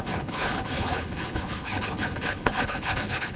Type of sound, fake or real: fake